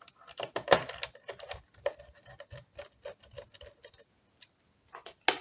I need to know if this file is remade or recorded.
recorded